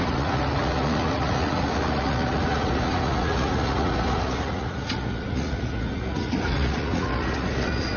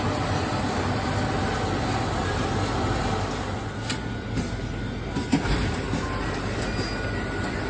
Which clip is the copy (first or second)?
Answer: first